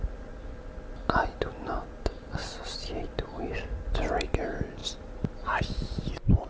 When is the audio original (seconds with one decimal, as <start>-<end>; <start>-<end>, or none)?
0.0-6.5